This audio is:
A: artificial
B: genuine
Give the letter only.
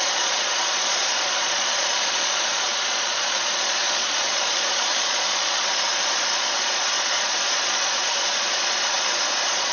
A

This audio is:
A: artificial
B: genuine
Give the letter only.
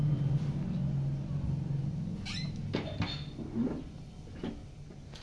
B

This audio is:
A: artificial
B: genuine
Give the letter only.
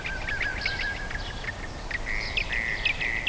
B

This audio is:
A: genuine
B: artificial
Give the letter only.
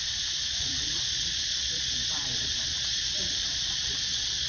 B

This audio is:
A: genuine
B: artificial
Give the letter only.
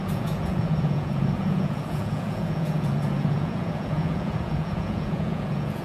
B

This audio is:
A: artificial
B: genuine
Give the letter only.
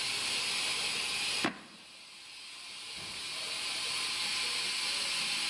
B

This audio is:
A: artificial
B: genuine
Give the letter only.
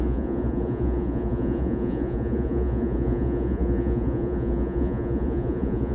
A